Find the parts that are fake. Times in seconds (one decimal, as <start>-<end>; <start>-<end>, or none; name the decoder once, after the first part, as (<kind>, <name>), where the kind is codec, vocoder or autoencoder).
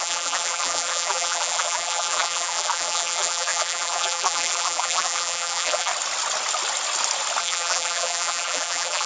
0.0-5.9 (vocoder, BigVGAN v2); 7.4-9.1